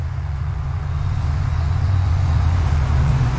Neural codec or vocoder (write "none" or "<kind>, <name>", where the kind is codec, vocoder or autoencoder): vocoder, Vocos